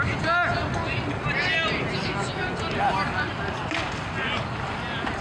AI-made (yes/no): no